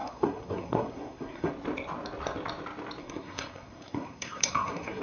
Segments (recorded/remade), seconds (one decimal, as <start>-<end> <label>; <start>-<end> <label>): 0.0-1.5 remade; 1.5-3.0 recorded; 3.0-5.0 remade